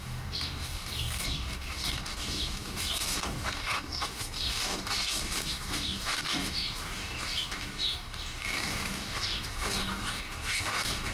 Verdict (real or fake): fake